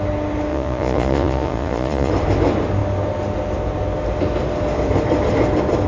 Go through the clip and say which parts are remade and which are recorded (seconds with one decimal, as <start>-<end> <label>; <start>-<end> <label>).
0.0-0.5 recorded; 0.5-2.1 remade; 2.1-5.9 recorded